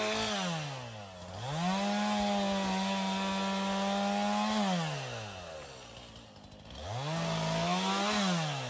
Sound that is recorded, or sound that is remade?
recorded